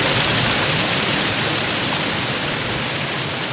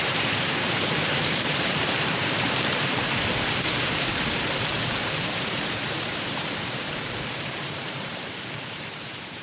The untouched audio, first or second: first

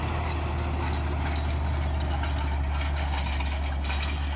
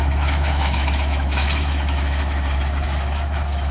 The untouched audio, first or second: first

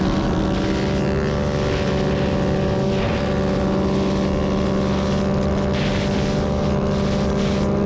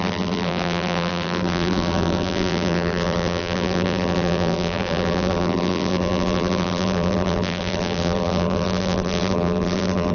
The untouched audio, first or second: first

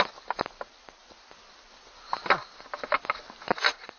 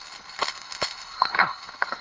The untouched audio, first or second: first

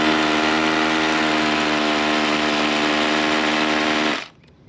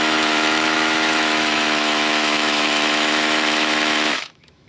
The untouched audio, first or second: first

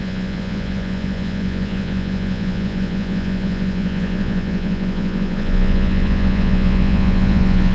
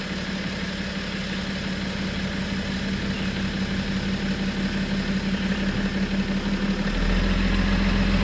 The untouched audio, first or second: second